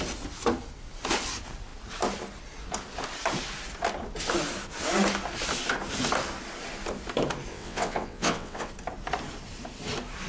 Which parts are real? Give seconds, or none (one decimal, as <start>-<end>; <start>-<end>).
0.0-7.5; 8.7-10.3